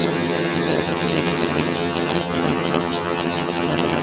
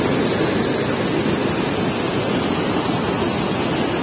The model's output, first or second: first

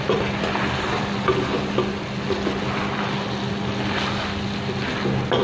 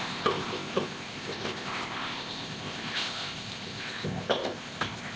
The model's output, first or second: second